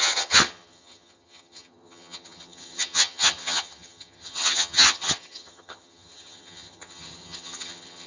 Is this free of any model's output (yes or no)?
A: no